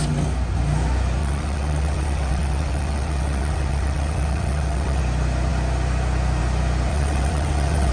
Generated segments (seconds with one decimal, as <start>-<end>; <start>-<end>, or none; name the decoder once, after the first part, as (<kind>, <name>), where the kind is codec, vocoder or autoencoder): 1.2-5.0 (vocoder, WaveNeXt); 6.9-7.9

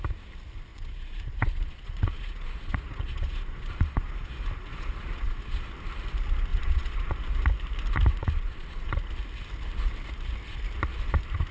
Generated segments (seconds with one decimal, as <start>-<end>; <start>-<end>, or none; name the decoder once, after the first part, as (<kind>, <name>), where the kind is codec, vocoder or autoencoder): 0.7-4.3 (vocoder, Vocos); 4.7-5.6; 6.5-7.1; 8.1-9.1

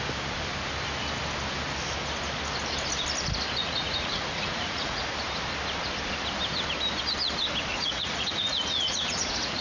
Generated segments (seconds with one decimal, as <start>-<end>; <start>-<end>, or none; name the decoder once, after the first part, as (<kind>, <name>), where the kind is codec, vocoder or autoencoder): 3.6-5.0 (vocoder, Vocos); 7.7-9.6

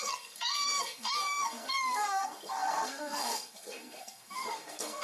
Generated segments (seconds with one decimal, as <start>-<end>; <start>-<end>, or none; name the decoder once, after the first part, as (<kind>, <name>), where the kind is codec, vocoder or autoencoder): 0.0-5.0 (codec, SNAC)

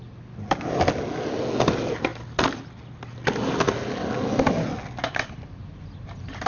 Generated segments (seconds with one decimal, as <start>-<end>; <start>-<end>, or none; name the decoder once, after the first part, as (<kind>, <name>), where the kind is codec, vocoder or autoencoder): 5.6-6.5 (vocoder, BigVGAN v2)